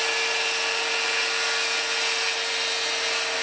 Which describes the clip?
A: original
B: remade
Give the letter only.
A